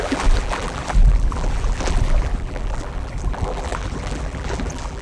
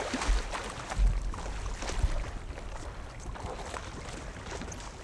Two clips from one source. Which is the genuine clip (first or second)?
second